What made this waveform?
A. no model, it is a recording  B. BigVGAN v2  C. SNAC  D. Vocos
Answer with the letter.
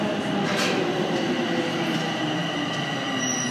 A